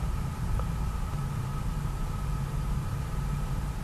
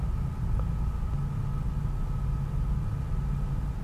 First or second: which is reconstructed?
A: first